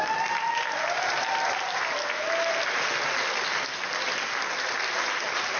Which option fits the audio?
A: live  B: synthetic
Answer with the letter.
A